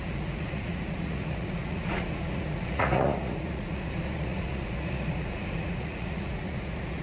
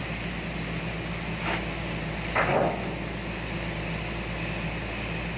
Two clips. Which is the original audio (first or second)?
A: second